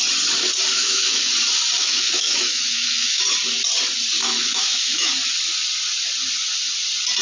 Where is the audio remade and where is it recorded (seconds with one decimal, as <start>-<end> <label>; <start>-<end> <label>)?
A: 0.0-0.7 recorded; 0.7-1.3 remade; 1.3-1.8 recorded; 1.8-3.2 remade; 3.2-4.2 recorded; 4.2-5.1 remade; 5.1-7.2 recorded